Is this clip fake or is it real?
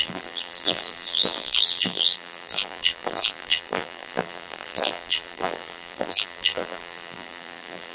fake